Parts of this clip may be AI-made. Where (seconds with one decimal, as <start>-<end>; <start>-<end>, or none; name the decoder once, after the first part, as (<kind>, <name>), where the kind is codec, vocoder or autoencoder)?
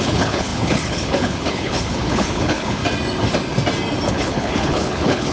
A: 0.0-2.8 (codec, HILCodec); 4.1-5.3